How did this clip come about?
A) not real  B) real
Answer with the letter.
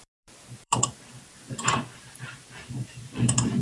A